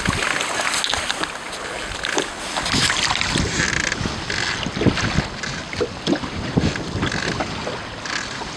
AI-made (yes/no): no